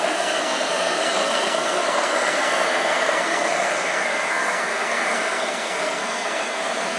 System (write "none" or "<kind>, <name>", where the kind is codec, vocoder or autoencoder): codec, SNAC